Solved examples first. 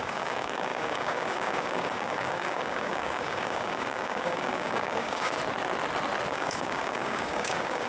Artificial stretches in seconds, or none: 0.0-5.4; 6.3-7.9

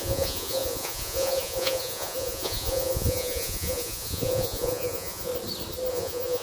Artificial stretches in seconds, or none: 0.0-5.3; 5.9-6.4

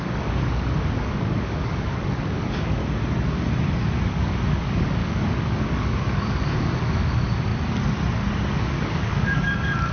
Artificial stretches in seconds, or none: 0.0-2.8; 4.1-7.5; 8.5-9.9

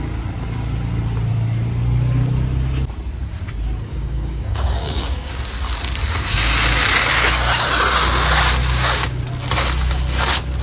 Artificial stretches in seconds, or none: 3.9-5.4; 8.6-9.2

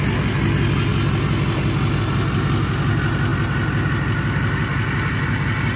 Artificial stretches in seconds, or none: none